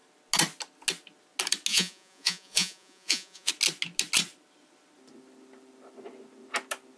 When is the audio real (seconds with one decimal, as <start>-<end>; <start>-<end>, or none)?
0.0-1.7; 3.5-7.0

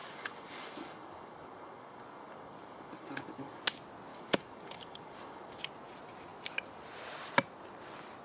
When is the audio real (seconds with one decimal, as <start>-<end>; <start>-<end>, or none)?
3.6-4.1; 5.6-8.2

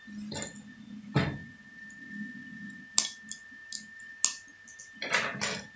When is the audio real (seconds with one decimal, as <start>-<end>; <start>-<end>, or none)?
0.0-5.8

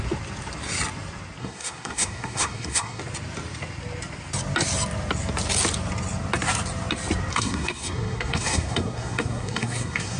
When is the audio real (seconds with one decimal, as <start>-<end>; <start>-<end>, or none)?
0.0-1.4; 3.0-7.3

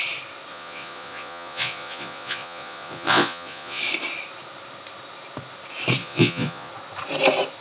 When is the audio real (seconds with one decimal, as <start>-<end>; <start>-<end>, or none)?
0.0-0.5; 3.8-6.0; 6.7-7.6

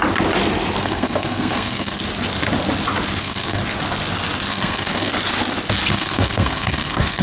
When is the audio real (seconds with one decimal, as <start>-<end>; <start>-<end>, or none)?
0.0-0.8; 2.0-3.2; 3.6-4.5; 5.1-5.9

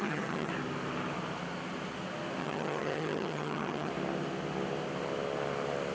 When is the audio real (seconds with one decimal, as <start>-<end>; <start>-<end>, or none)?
0.5-2.4; 3.9-5.9

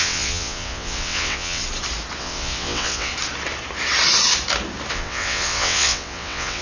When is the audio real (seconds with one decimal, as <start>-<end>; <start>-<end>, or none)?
1.6-2.2; 3.1-4.9